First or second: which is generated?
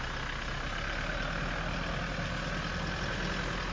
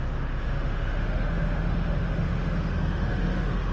second